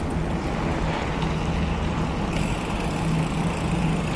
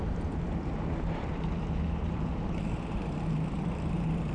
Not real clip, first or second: second